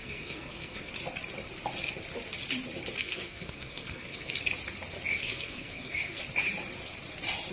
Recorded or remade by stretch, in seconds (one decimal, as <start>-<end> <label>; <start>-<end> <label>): 0.0-0.9 remade; 0.9-3.0 recorded; 3.0-4.4 remade; 4.4-5.2 recorded; 5.2-6.2 remade; 6.2-7.5 recorded